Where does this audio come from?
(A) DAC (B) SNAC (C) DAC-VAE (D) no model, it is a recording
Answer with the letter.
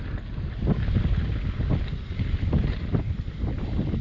D